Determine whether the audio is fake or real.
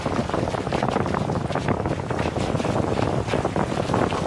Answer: real